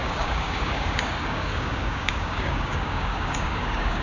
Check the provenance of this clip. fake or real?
fake